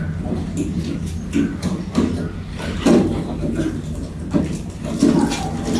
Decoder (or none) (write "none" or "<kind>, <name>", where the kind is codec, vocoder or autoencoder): none